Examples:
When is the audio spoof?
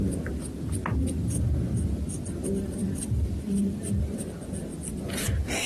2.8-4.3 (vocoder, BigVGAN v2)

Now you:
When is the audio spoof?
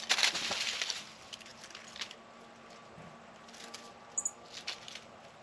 none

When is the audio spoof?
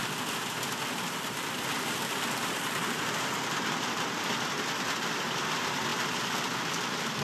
0.0-4.3 (vocoder, BigVGAN v2); 5.9-7.2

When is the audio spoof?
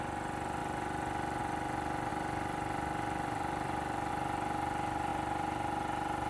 2.1-4.1 (vocoder, BigVGAN v2)